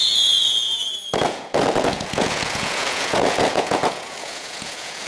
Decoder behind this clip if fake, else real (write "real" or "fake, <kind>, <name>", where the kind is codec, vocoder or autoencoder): fake, vocoder, Vocos